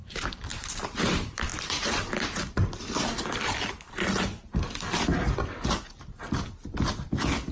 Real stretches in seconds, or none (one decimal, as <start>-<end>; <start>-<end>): 1.0-1.5; 2.1-7.5